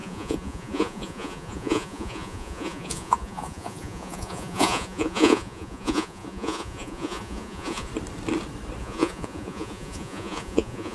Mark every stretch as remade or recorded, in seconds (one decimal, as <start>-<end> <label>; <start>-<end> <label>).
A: 0.0-7.9 remade; 7.9-8.8 recorded; 8.8-10.9 remade